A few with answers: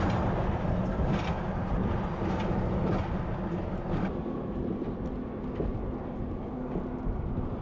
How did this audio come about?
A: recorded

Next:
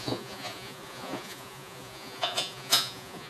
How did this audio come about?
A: remade